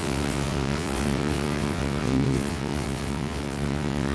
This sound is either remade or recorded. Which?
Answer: remade